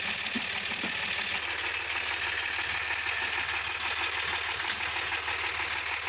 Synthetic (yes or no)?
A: no